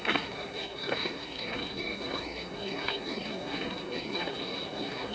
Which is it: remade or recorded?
remade